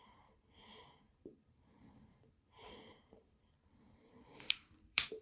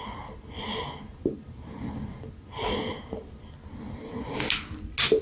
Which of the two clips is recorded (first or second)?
second